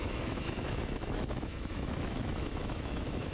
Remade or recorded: remade